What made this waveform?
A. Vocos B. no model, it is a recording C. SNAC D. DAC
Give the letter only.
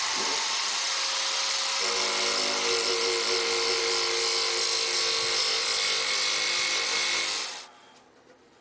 B